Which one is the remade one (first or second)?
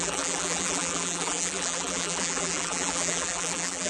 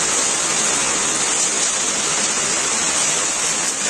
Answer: first